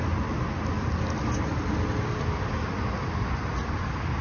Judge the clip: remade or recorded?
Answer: recorded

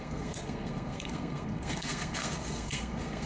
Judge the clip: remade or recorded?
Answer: remade